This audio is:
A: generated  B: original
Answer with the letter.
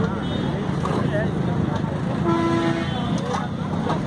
B